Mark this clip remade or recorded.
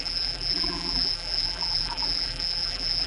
remade